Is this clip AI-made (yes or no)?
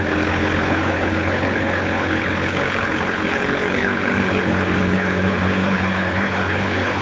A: yes